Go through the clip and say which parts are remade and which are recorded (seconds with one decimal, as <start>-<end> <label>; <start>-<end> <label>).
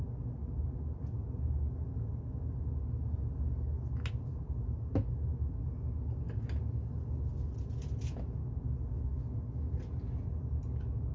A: 0.0-11.1 recorded